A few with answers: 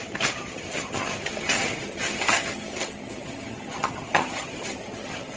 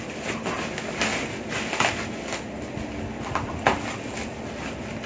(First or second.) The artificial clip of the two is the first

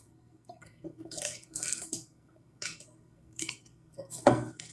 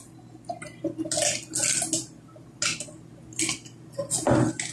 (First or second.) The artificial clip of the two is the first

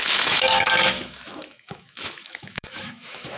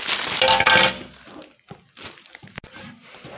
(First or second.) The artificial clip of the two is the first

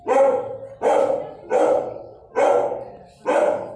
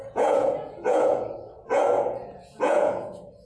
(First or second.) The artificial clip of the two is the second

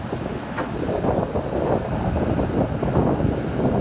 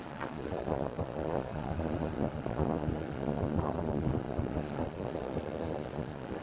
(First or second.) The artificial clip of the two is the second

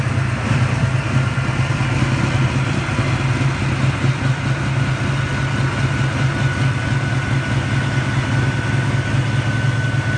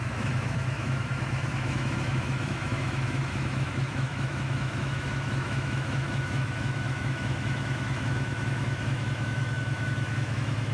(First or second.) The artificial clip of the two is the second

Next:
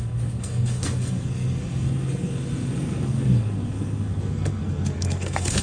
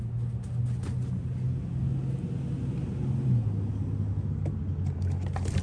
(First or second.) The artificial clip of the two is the first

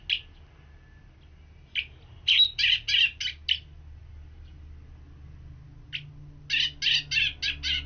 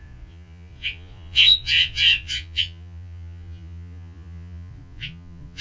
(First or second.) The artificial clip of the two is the second